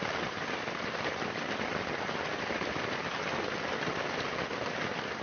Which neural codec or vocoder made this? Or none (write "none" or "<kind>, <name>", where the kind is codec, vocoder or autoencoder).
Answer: none